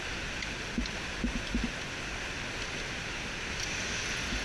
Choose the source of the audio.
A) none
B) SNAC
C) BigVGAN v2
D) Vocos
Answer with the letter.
A